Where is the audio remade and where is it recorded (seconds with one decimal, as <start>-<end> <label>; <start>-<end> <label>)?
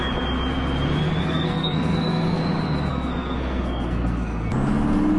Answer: 0.0-1.2 recorded; 1.2-2.4 remade; 2.4-2.9 recorded; 2.9-4.5 remade; 4.5-5.2 recorded